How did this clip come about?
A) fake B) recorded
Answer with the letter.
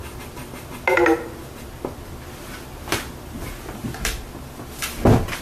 B